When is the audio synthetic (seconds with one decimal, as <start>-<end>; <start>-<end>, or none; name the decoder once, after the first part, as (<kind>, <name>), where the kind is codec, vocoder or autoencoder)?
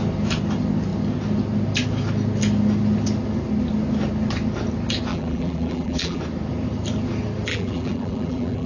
5.1-6.2 (vocoder, BigVGAN v2); 7.5-8.7